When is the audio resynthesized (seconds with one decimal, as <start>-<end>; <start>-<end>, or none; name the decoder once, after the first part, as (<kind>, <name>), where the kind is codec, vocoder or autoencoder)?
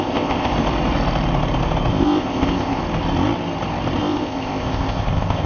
0.0-0.5 (codec, ZipCodec); 1.9-2.8; 4.0-5.5